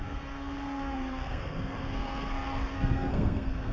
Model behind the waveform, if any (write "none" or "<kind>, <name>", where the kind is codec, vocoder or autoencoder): codec, SNAC